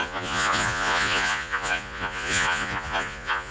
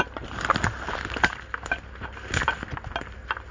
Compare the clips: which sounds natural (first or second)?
second